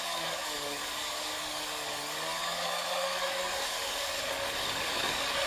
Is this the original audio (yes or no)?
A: no